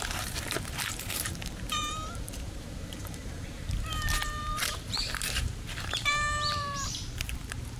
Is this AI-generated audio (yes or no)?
yes